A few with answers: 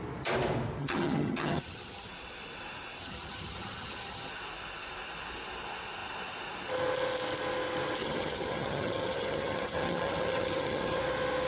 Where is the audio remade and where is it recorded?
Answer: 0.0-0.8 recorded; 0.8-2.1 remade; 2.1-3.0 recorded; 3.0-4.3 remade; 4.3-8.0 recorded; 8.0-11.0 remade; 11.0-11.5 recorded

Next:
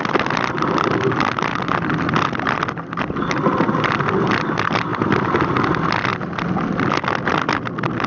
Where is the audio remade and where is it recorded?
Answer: 0.0-8.1 recorded